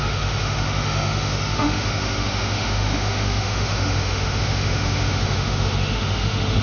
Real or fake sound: fake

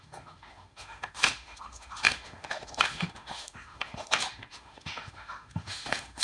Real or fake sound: fake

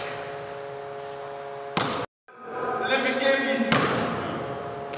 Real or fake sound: real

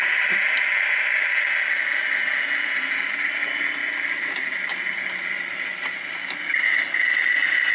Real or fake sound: real